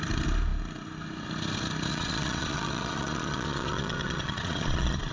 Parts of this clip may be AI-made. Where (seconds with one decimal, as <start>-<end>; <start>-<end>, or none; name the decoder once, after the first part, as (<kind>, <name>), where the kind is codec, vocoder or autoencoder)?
1.9-5.1 (vocoder, Vocos)